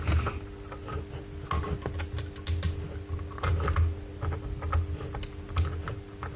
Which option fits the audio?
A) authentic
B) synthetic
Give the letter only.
A